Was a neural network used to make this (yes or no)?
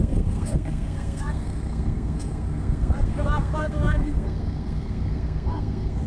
yes